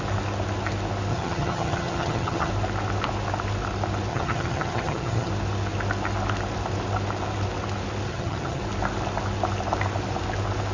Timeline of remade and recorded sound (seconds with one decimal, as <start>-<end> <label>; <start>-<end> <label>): 0.0-1.1 recorded; 1.1-2.5 remade; 2.5-4.1 recorded; 4.1-5.3 remade; 5.3-8.1 recorded; 8.1-8.6 remade; 8.6-10.7 recorded